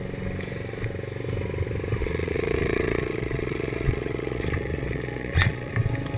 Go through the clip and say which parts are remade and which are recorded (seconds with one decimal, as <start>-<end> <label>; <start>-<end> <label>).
0.0-2.0 recorded; 2.0-5.7 remade; 5.7-6.2 recorded